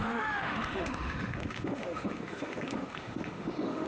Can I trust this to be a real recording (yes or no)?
no